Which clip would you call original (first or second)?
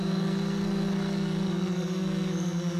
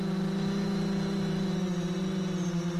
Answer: second